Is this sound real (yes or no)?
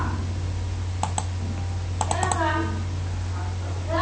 yes